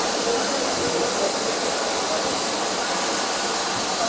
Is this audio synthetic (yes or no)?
no